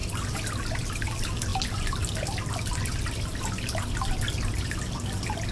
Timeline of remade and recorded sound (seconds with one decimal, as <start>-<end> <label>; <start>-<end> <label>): 0.0-5.5 recorded